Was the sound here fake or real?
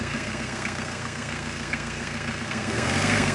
fake